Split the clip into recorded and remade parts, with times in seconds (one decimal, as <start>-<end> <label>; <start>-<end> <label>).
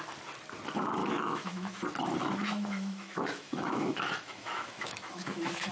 0.0-1.0 recorded; 1.0-1.8 remade; 1.8-2.2 recorded; 2.2-5.7 remade